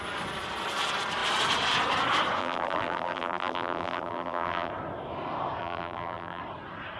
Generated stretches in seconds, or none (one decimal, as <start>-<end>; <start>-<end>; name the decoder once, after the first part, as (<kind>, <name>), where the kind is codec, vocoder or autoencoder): 2.4-4.7 (vocoder, BigVGAN v2); 5.6-6.4